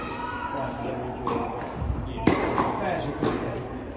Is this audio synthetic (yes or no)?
no